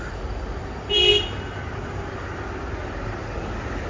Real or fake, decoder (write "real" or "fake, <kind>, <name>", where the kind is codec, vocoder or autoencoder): real